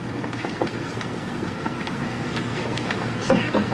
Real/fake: fake